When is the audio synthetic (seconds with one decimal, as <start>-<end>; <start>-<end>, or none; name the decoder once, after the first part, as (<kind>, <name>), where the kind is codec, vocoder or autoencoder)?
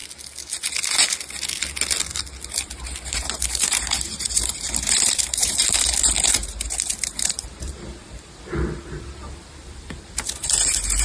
2.5-11.0 (vocoder, BigVGAN v2)